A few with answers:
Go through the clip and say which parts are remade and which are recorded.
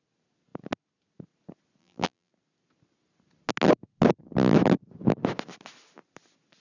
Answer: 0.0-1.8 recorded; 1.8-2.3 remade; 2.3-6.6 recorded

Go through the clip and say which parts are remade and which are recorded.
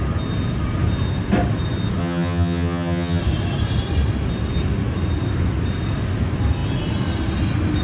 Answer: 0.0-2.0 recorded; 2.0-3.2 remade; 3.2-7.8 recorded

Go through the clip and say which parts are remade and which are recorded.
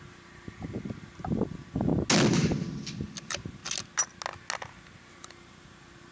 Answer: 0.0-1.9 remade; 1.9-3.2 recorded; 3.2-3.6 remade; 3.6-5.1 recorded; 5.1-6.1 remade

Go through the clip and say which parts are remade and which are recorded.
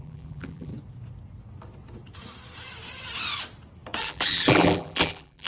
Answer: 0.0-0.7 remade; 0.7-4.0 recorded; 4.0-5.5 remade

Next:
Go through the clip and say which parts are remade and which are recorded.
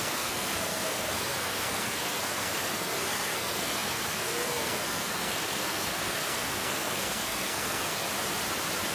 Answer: 0.0-8.0 remade; 8.0-8.9 recorded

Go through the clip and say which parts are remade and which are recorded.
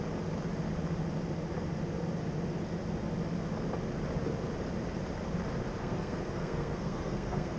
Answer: 0.0-5.8 recorded; 5.8-7.6 remade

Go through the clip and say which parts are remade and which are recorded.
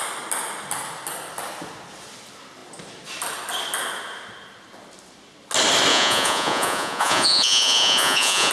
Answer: 0.0-5.9 recorded; 5.9-8.5 remade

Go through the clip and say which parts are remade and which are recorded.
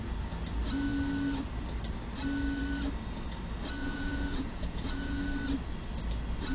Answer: 0.0-3.8 recorded; 3.8-5.3 remade; 5.3-6.5 recorded